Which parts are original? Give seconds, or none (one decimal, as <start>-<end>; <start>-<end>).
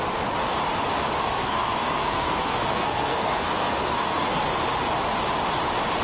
0.0-1.2; 4.4-6.0